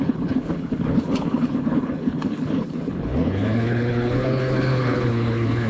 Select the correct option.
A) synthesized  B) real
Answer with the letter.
A